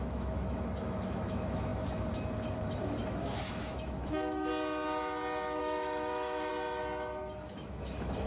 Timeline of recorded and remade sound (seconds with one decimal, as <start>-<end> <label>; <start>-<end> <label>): 0.0-4.5 remade; 4.5-5.6 recorded; 5.6-6.5 remade; 6.5-7.5 recorded; 7.5-8.3 remade